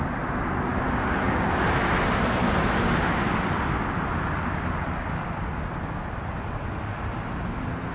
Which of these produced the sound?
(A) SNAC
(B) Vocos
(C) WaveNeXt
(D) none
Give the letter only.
D